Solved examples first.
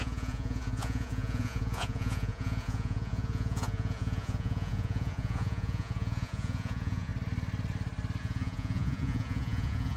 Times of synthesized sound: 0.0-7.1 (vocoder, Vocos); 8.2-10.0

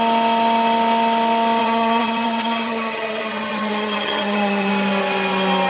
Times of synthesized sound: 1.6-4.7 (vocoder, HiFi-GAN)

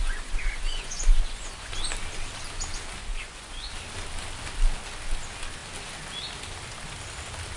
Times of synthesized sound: 0.0-1.7 (vocoder, Vocos); 3.0-3.7